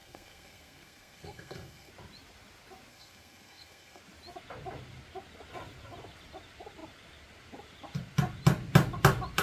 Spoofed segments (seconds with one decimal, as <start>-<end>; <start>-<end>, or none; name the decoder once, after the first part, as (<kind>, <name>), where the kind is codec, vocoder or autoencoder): 0.0-1.9 (codec, SNAC); 2.9-4.0